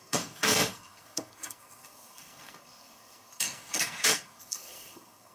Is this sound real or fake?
fake